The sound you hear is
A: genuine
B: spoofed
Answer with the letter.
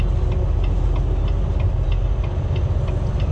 A